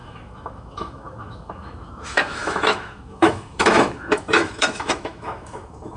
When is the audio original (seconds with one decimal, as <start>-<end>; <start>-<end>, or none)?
none